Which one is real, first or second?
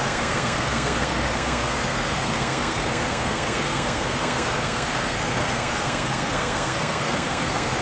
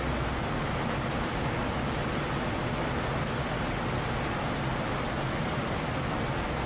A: second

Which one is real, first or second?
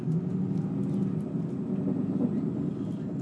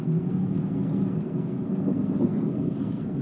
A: first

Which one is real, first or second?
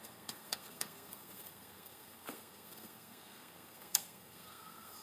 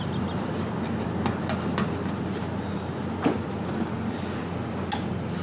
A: second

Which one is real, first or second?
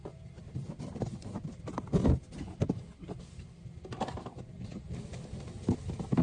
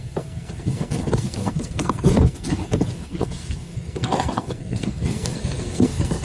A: first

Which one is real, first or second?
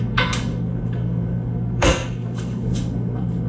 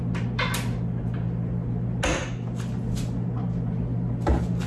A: second